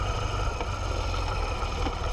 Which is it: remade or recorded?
recorded